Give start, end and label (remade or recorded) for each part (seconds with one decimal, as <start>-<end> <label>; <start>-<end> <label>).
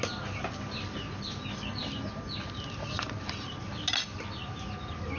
0.0-5.2 recorded